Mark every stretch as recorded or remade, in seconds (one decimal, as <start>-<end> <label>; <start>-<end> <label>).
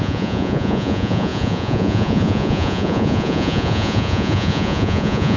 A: 0.0-5.4 remade